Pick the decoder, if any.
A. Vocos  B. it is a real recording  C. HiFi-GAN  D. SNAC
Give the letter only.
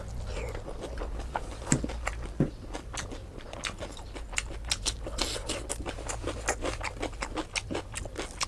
B